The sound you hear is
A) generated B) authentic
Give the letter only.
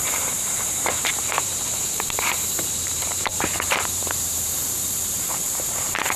A